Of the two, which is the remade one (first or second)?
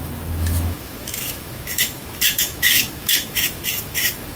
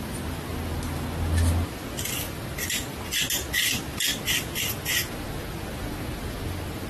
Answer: first